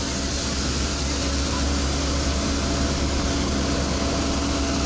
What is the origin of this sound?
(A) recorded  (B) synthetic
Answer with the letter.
A